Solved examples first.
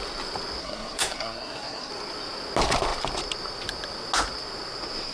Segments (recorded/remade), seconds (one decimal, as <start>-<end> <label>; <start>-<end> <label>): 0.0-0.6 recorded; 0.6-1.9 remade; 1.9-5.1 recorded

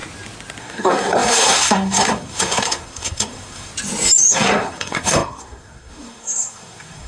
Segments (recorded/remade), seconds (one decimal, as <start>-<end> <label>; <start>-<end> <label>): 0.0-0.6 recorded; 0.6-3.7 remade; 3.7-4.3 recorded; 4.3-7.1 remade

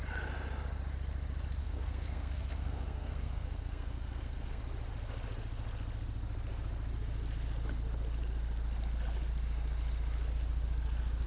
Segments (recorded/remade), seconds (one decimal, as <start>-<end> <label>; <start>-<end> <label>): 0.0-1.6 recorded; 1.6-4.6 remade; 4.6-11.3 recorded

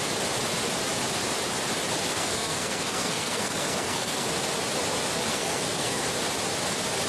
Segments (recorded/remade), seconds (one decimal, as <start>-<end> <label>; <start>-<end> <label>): 0.0-2.1 recorded; 2.1-4.3 remade; 4.3-5.3 recorded; 5.3-6.0 remade; 6.0-7.1 recorded